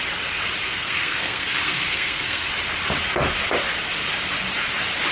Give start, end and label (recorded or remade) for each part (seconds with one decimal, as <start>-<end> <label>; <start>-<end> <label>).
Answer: 0.0-0.6 recorded; 0.6-2.5 remade; 2.5-5.1 recorded